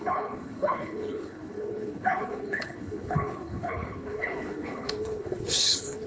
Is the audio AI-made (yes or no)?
yes